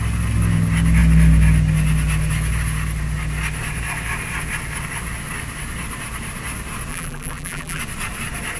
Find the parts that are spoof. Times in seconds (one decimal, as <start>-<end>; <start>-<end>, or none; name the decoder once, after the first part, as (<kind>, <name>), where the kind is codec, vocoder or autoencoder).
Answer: 6.9-7.8 (vocoder, BigVGAN v2)